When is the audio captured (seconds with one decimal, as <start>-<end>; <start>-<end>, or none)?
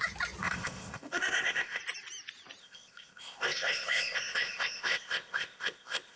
0.0-0.4; 1.8-2.6